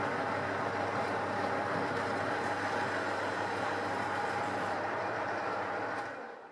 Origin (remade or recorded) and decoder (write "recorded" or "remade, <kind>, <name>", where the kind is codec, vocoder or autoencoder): recorded